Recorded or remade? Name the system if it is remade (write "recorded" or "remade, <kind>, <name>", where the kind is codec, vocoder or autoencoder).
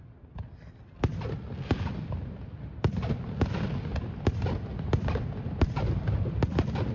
recorded